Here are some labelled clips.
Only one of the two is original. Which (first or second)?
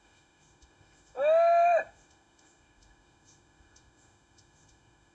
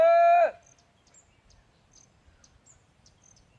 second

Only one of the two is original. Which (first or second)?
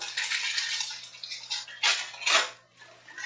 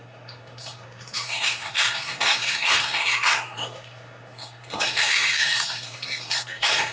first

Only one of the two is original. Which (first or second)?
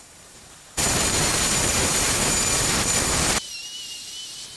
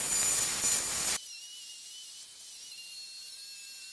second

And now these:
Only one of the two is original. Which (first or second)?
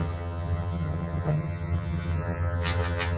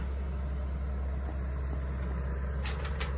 second